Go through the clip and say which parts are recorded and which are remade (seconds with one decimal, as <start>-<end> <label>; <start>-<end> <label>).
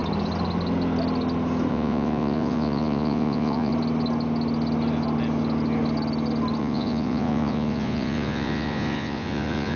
0.0-1.7 recorded; 1.7-3.7 remade; 3.7-6.6 recorded; 6.6-9.8 remade